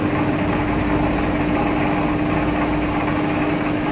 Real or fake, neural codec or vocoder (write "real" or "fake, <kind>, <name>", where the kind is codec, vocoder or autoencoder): real